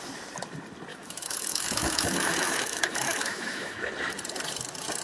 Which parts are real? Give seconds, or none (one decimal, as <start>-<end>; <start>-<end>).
0.0-0.9; 3.9-5.0